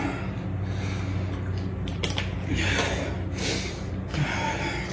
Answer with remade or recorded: recorded